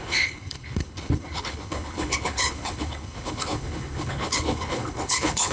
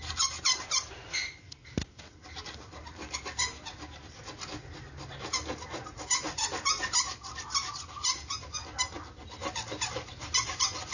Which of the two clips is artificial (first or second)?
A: first